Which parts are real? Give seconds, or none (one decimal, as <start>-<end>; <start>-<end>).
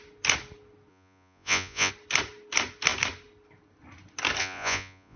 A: 0.0-0.9; 1.9-4.4